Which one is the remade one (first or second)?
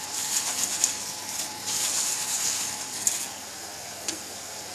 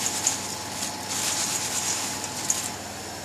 first